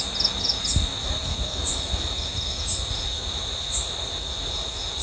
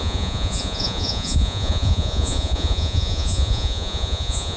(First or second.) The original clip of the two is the first